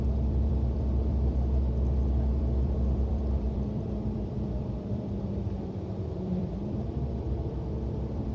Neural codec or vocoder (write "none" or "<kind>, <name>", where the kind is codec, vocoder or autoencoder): vocoder, BigVGAN v2